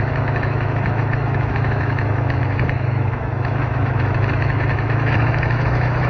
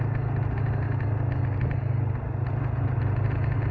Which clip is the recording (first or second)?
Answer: second